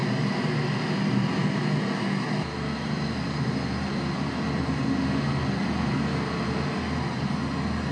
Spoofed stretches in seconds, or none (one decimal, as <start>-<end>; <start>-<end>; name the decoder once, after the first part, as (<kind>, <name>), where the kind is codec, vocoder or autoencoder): none